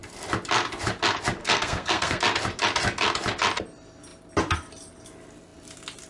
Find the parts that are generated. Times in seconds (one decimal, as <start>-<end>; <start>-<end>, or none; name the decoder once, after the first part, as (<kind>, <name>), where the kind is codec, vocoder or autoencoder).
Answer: 1.4-2.2 (codec, SNAC)